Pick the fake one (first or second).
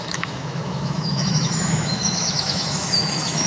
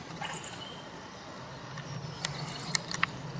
first